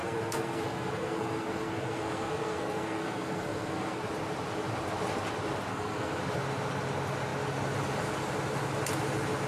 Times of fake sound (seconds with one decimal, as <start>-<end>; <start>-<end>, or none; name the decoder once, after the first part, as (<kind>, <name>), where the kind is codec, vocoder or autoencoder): 0.0-4.0 (codec, SNAC); 5.7-6.2